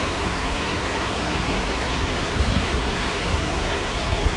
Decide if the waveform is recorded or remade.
remade